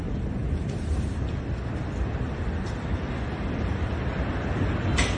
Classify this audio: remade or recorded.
recorded